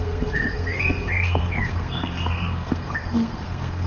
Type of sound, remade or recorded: remade